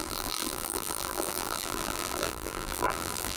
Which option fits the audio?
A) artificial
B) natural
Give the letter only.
A